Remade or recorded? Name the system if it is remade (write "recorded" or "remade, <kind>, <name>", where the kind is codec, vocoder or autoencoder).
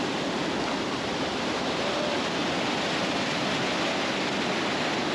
remade, vocoder, BigVGAN v2